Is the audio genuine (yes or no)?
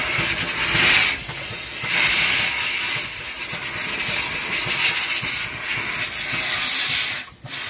yes